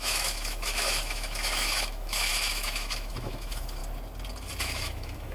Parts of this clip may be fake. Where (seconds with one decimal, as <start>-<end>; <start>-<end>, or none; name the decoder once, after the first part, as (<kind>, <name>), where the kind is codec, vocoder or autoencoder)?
0.0-3.8 (autoencoder, DAC-VAE); 4.6-5.3